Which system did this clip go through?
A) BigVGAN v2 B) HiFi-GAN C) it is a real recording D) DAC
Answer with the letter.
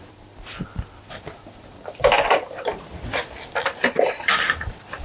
A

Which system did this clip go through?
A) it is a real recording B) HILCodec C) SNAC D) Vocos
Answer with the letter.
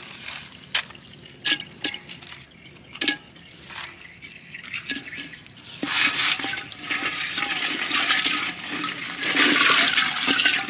A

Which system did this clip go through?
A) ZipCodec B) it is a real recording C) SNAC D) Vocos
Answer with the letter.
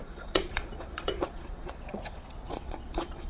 D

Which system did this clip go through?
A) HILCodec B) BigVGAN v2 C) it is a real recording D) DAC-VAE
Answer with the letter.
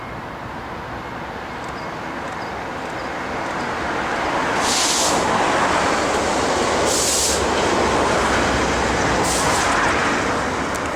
C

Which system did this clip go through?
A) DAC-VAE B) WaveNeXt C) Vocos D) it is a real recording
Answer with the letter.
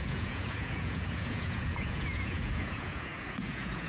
C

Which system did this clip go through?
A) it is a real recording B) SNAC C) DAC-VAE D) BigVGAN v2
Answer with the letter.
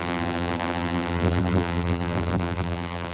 D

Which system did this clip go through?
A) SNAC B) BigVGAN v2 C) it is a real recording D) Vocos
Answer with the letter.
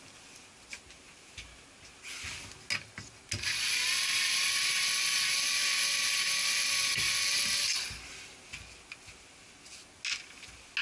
C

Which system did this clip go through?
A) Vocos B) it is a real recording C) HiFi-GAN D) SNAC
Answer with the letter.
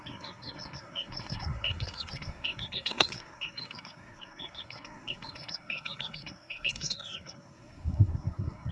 D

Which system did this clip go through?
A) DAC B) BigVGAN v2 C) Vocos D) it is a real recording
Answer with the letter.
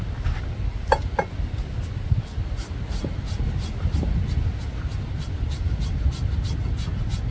D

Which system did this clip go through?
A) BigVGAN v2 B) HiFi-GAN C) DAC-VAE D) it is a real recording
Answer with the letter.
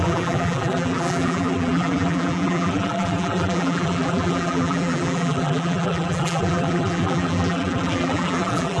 A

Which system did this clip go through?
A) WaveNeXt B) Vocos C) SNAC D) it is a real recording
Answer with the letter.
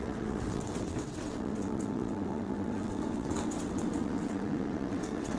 A